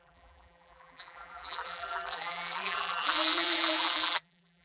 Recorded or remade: remade